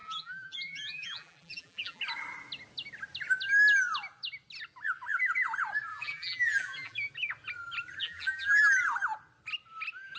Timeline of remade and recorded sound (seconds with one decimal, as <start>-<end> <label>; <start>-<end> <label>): 0.0-2.0 remade; 2.0-5.9 recorded; 5.9-7.1 remade; 7.1-8.0 recorded; 8.0-8.7 remade; 8.7-10.2 recorded